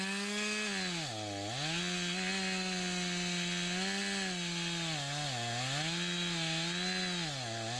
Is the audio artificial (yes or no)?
no